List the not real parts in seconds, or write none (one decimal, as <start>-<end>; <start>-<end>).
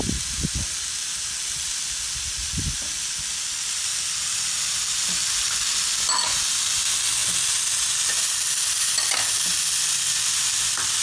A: none